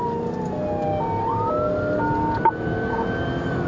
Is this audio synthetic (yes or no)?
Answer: no